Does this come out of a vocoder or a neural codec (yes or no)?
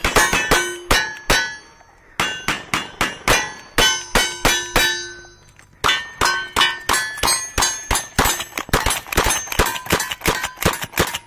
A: no